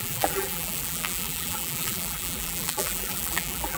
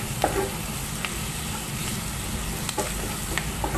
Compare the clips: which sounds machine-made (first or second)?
first